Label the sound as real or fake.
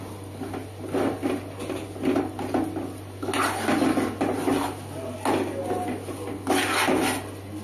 real